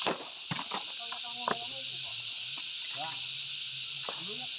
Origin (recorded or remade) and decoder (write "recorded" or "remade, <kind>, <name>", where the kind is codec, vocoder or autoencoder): recorded